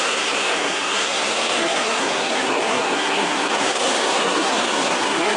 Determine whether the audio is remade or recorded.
remade